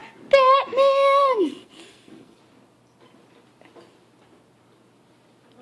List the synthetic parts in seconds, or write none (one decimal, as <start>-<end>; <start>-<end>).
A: 1.2-2.4